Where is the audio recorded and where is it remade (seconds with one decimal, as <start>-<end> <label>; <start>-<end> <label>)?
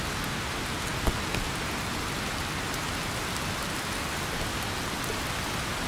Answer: 0.0-5.9 recorded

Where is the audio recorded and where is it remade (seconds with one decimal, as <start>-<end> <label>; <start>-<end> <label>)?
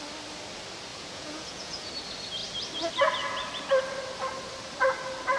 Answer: 0.0-0.9 recorded; 0.9-1.9 remade; 1.9-5.4 recorded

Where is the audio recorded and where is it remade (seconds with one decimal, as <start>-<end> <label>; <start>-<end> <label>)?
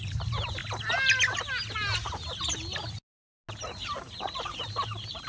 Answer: 0.0-0.6 remade; 0.6-3.8 recorded; 3.8-5.3 remade